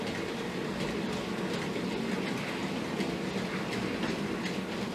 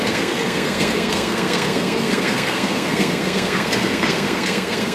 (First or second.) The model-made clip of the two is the second